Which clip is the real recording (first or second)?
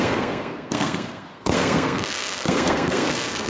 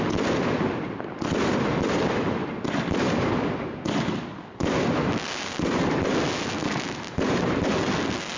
second